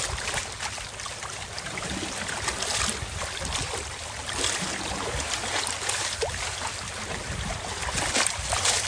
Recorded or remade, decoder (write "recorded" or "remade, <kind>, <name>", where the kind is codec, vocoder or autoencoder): recorded